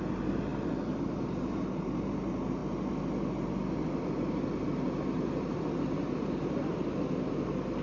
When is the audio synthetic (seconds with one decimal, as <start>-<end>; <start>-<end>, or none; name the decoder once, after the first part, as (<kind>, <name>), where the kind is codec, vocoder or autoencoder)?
none